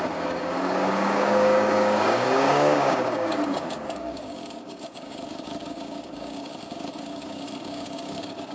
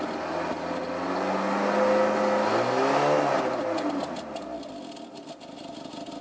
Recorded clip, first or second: second